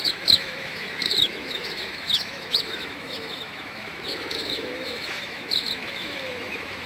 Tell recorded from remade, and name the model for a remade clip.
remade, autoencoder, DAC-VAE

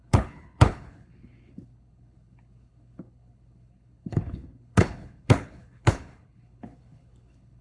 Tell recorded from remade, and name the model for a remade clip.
remade, codec, HILCodec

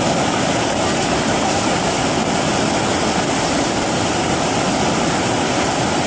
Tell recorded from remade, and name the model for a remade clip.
recorded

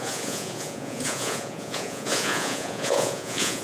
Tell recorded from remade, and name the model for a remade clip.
remade, vocoder, Vocos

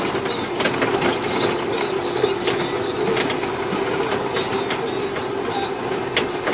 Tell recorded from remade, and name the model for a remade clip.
recorded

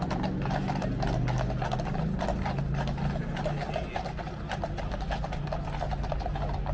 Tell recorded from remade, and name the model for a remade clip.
recorded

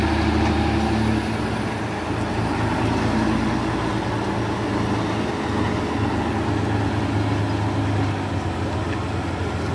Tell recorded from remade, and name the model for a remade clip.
recorded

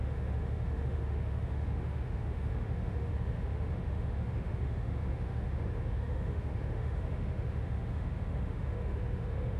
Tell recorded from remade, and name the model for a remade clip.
remade, autoencoder, DAC-VAE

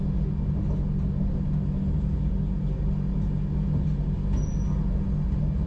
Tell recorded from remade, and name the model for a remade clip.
recorded